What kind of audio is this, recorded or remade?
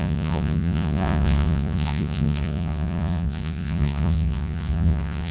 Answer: remade